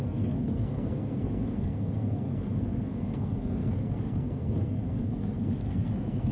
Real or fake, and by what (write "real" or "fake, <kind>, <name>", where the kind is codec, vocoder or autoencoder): fake, codec, SNAC